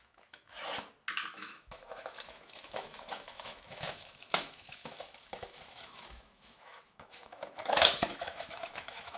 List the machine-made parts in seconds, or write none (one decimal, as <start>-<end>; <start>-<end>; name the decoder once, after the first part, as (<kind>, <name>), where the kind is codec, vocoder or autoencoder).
0.0-0.6 (autoencoder, DAC-VAE); 1.3-9.2